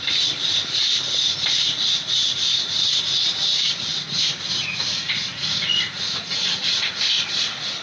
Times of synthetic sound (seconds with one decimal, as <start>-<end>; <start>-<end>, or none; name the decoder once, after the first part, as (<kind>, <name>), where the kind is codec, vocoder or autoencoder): 2.2-3.0 (vocoder, Vocos); 3.9-7.0

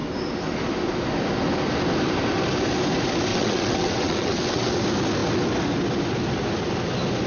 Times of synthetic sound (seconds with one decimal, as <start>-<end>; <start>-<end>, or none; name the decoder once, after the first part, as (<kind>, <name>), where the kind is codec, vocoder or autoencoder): 3.3-4.7 (vocoder, WaveNeXt)

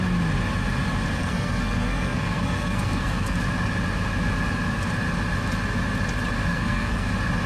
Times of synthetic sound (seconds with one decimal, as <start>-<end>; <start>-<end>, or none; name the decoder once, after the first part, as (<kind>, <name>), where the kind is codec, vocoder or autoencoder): 1.2-3.4 (codec, SNAC); 6.5-7.1

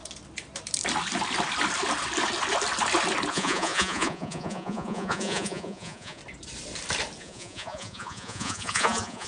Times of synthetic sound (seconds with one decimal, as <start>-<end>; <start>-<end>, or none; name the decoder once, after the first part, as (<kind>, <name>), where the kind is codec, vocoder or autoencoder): 3.3-6.2 (vocoder, Vocos); 7.2-9.3

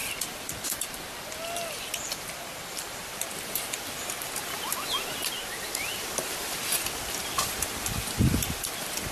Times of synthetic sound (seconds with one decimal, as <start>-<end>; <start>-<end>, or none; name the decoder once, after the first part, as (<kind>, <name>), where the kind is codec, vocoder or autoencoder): none

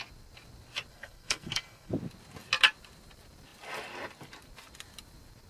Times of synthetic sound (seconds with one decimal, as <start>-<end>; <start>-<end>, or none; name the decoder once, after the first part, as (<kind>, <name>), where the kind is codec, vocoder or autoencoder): 0.9-1.9 (codec, SNAC)

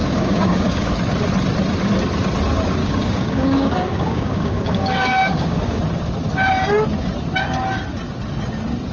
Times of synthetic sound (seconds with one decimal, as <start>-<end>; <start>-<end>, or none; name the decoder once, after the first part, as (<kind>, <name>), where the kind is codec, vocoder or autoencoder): 0.0-0.9 (codec, DAC); 2.8-5.8

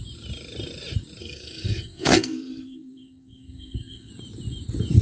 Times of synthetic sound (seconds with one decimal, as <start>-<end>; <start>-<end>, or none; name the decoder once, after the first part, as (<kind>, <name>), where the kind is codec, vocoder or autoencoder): 1.2-4.1 (codec, SNAC)